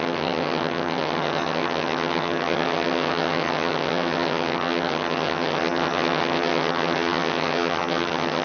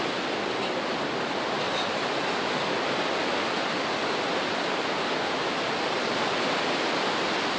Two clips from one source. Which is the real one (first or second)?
second